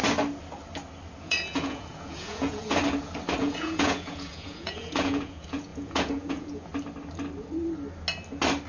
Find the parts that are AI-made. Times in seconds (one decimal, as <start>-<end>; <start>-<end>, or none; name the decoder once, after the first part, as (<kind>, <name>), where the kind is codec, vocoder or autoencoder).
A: 1.2-2.8 (vocoder, Vocos); 3.4-6.7